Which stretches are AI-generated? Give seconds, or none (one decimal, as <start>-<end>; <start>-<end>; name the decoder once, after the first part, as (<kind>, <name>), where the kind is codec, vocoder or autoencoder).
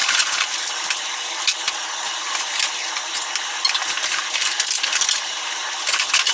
0.0-1.6 (vocoder, BigVGAN v2)